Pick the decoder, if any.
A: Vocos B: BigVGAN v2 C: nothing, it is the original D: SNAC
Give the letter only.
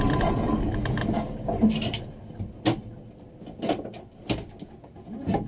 C